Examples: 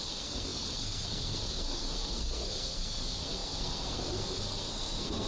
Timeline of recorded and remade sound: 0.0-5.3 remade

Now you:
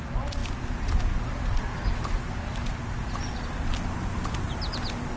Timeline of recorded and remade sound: 0.0-5.2 recorded

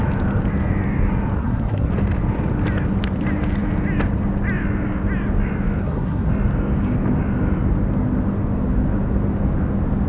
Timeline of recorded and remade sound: 0.0-1.4 recorded; 1.4-1.9 remade; 1.9-5.8 recorded; 5.8-6.3 remade; 6.3-10.1 recorded

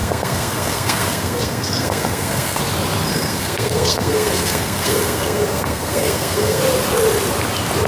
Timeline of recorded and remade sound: 0.0-2.6 remade; 2.6-3.1 recorded; 3.1-6.6 remade; 6.6-7.9 recorded

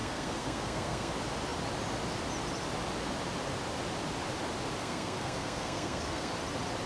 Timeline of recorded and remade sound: 0.0-1.1 remade; 1.1-4.8 recorded; 4.8-6.3 remade; 6.3-6.9 recorded

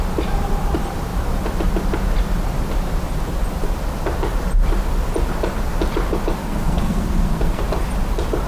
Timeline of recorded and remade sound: 0.0-6.4 recorded; 6.4-7.6 remade; 7.6-8.5 recorded